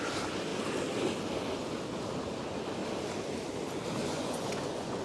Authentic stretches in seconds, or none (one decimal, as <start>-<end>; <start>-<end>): 0.0-4.0